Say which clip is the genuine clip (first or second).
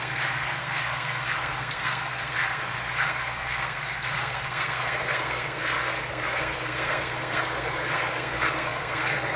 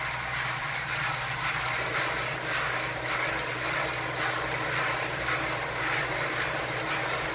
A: second